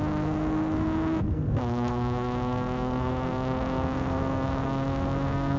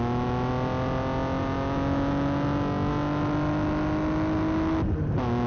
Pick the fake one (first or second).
first